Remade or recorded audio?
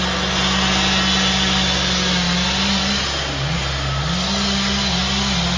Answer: recorded